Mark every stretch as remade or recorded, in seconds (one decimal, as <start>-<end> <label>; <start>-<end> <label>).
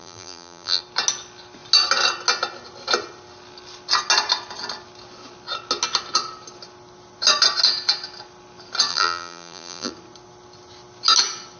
0.0-0.8 remade; 0.8-8.9 recorded; 8.9-9.9 remade; 9.9-11.6 recorded